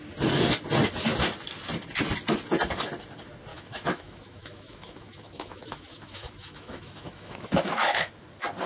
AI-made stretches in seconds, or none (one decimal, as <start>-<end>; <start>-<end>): 3.5-8.1